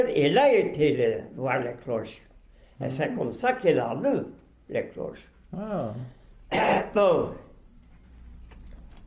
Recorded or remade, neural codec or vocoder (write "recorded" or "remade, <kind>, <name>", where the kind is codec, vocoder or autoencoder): recorded